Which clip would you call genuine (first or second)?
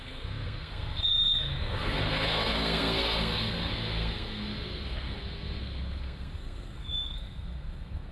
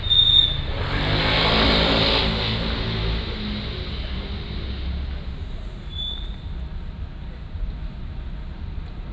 second